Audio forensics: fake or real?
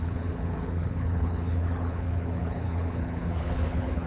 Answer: fake